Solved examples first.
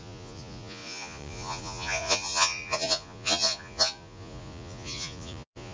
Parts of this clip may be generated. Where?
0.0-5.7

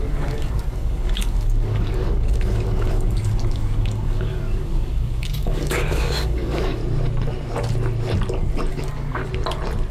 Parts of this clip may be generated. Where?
0.0-6.8; 8.7-9.2